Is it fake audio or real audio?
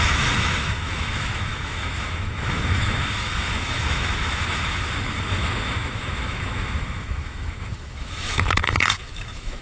fake